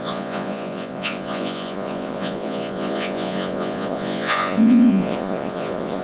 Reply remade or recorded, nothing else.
remade